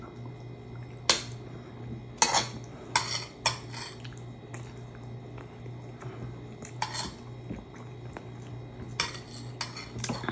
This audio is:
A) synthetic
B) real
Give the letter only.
B